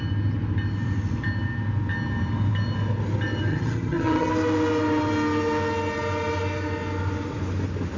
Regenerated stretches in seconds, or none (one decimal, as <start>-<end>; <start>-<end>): 3.5-4.3